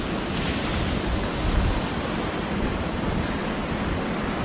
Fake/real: real